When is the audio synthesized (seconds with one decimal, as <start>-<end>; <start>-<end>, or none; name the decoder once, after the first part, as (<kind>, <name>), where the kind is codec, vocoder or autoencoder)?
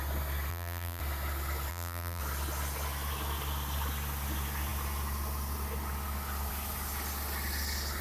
0.5-1.0 (vocoder, BigVGAN v2); 1.7-2.2